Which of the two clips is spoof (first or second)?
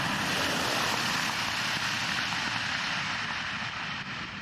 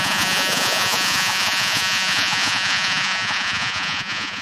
second